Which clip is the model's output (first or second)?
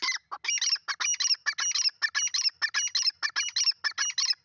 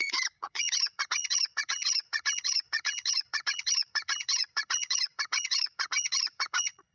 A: second